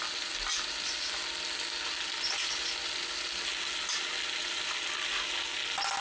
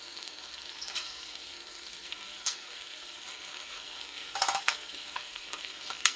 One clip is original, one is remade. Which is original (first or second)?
first